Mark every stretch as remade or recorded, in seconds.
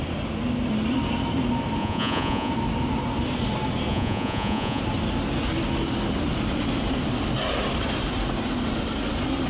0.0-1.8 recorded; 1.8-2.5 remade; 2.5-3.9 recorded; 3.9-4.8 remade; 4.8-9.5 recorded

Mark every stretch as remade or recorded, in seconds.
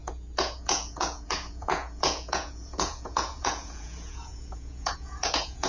0.0-5.7 remade